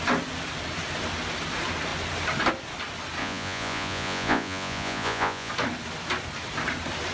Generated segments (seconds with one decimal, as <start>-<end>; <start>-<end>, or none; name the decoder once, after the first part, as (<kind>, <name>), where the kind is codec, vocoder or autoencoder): 3.2-5.5 (vocoder, Vocos)